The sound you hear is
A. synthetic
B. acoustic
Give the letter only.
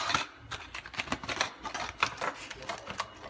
B